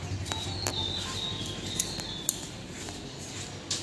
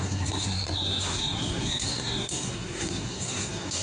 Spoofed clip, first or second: second